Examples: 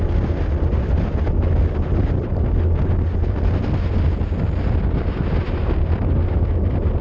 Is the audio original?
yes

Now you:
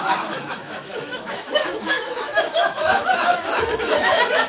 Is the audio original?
no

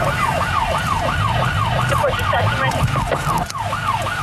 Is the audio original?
yes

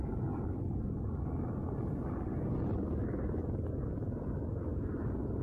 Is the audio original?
yes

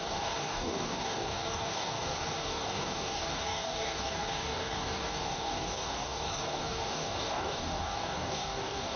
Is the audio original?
no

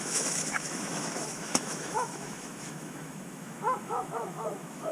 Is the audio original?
no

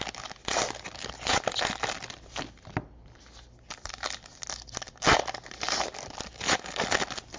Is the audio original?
yes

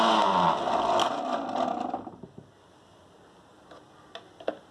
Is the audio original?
yes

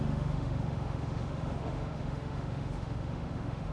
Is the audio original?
no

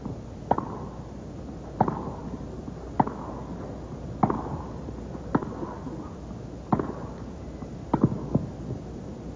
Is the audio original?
yes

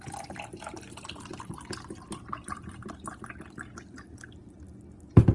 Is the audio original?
yes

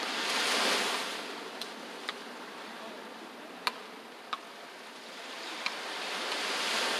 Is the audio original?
yes